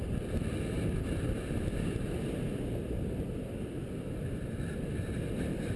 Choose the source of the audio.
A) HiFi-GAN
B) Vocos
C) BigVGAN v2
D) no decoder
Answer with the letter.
D